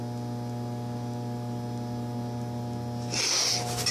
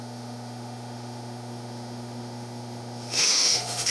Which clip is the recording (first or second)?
first